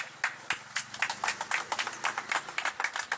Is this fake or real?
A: real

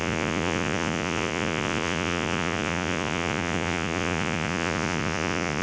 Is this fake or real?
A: fake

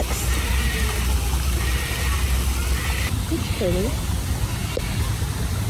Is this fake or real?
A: real